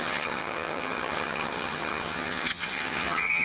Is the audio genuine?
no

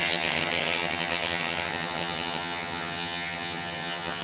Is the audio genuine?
no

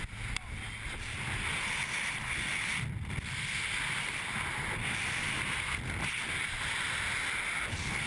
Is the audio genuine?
yes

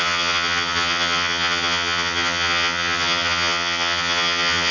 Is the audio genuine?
no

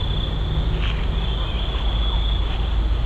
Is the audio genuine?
yes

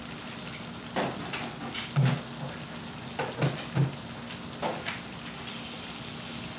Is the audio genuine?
yes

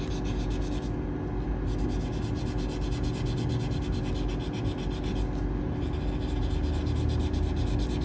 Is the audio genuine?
yes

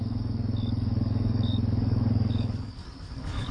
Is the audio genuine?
no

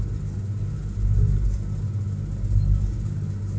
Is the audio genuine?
yes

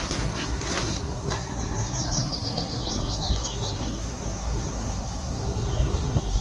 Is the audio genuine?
no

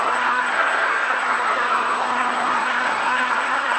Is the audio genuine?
no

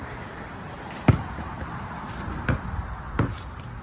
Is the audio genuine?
yes